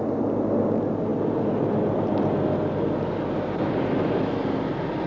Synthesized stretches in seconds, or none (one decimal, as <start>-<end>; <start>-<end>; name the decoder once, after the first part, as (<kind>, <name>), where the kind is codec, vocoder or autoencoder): none